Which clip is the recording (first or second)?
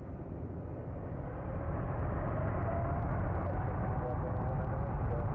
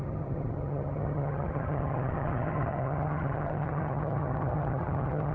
first